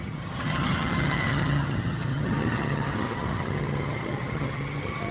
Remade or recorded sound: remade